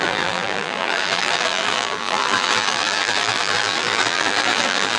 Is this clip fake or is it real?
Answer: fake